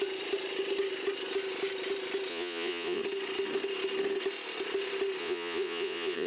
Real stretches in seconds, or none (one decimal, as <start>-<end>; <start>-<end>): 0.0-2.3; 3.0-5.2